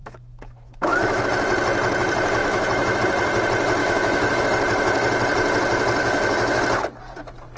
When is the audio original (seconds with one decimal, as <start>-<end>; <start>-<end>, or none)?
1.2-2.4; 3.0-3.8; 4.4-6.0; 6.6-7.6